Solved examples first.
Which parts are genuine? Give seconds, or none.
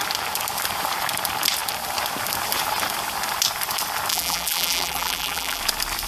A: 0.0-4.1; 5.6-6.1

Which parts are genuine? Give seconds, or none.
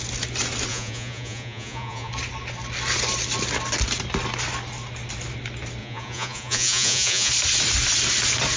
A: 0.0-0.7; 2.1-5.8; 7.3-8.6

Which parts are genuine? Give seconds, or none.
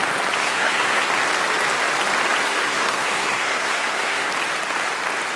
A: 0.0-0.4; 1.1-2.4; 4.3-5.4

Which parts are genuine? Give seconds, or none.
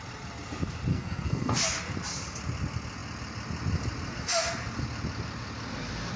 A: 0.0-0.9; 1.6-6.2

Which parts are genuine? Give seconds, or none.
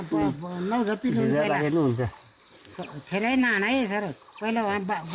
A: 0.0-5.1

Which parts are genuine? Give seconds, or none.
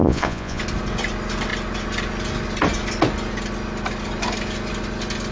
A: 0.6-5.3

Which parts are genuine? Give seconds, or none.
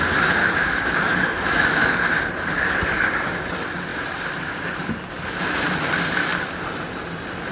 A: 0.0-0.4; 1.9-7.5